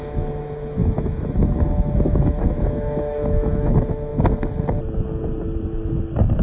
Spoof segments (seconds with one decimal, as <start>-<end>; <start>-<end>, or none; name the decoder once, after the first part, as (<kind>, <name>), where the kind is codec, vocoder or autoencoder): 0.0-4.1 (autoencoder, DAC-VAE)